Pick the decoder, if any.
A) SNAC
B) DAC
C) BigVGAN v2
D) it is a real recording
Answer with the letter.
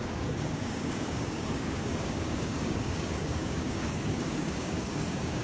B